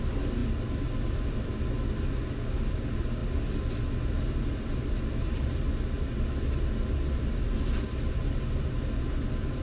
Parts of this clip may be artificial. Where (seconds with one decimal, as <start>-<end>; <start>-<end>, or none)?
none